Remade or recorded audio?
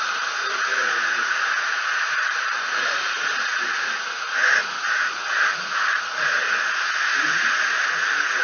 remade